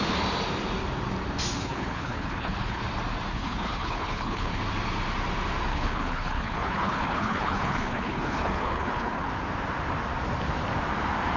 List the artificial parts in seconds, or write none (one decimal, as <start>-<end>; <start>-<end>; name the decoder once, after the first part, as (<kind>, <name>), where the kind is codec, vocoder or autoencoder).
1.6-2.8 (codec, HILCodec); 3.3-4.6; 5.7-9.3